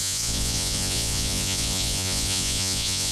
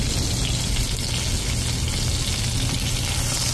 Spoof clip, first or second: first